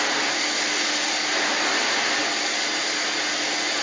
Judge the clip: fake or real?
real